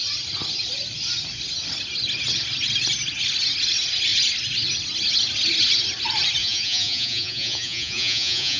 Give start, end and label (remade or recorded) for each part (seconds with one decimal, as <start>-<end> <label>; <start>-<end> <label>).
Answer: 0.0-6.4 recorded; 6.4-8.6 remade